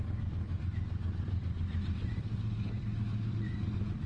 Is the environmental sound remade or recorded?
remade